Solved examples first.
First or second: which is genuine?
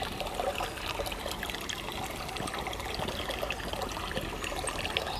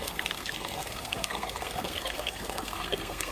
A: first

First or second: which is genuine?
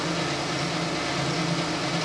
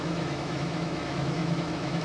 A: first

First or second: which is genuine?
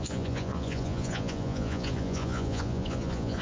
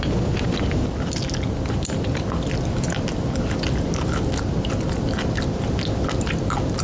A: second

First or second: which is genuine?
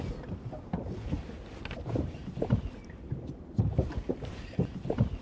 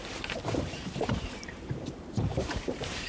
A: first